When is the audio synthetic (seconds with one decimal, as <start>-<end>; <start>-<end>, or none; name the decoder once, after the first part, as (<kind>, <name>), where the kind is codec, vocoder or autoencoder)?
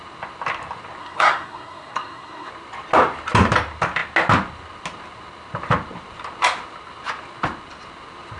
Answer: 1.0-2.5 (codec, SNAC)